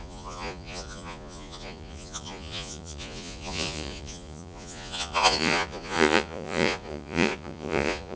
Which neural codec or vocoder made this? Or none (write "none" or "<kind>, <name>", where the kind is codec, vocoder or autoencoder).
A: vocoder, Vocos